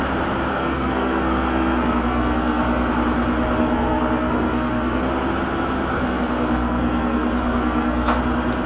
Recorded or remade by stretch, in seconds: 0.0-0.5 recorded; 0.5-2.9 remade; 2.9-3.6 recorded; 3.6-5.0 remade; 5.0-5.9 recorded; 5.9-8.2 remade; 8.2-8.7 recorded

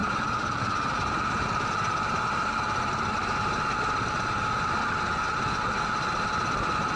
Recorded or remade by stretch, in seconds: 0.0-7.0 recorded

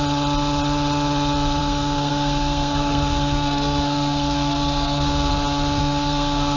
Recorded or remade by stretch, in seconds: 0.0-1.6 recorded; 1.6-5.3 remade; 5.3-5.8 recorded; 5.8-6.6 remade

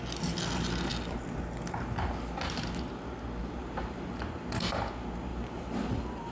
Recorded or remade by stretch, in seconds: 0.0-3.4 recorded; 3.4-4.1 remade; 4.1-5.3 recorded; 5.3-6.3 remade